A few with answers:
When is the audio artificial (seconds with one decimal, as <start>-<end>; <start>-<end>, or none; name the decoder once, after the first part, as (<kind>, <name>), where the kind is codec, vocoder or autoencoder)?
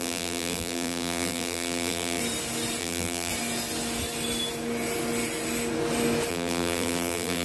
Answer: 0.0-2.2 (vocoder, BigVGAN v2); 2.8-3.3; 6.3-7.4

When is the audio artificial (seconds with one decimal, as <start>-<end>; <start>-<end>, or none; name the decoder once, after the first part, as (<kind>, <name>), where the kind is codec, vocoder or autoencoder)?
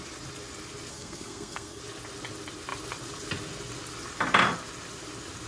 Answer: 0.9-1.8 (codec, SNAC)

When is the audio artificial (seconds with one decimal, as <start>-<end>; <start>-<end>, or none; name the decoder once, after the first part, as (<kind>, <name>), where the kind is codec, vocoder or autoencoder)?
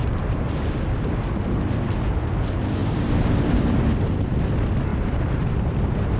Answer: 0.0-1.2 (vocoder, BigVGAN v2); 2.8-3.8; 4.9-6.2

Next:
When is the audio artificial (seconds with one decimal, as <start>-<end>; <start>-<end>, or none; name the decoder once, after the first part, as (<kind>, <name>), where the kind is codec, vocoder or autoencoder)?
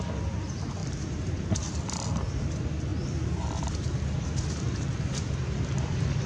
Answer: 0.8-1.5 (vocoder, BigVGAN v2)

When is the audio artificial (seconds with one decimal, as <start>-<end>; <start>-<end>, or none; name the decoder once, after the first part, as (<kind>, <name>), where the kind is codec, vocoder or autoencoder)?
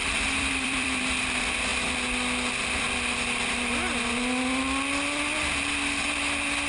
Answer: 0.0-1.0 (vocoder, BigVGAN v2)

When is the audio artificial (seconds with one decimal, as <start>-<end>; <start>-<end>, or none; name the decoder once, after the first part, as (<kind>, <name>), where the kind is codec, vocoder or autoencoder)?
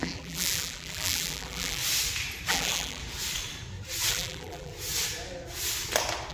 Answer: 0.0-1.8 (vocoder, BigVGAN v2); 2.5-3.0; 4.1-4.7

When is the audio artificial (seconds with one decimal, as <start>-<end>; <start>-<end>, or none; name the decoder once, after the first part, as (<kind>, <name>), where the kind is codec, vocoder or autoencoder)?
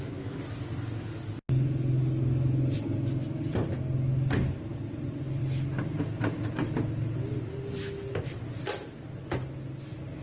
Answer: none